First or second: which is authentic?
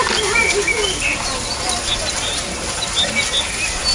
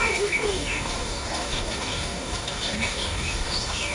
first